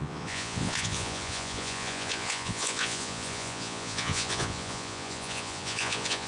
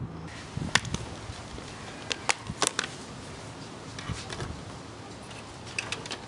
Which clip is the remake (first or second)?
first